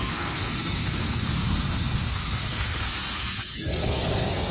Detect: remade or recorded remade